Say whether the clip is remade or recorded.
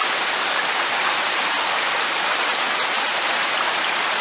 recorded